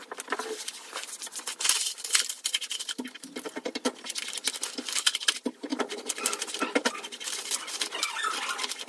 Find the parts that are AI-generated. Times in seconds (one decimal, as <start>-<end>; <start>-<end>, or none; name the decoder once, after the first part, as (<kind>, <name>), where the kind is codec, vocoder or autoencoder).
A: none